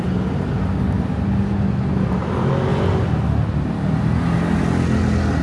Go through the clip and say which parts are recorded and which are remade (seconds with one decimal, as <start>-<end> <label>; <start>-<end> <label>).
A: 0.0-5.4 recorded